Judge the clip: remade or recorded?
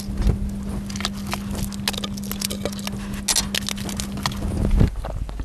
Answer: recorded